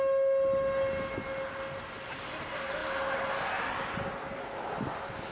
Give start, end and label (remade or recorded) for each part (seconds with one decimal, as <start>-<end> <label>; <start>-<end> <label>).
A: 0.0-5.3 recorded